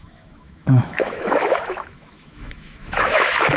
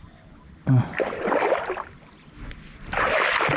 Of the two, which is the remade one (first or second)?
first